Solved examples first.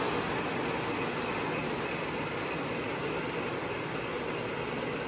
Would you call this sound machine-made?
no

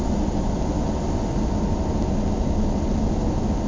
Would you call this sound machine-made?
no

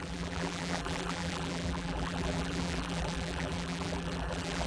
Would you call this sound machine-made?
yes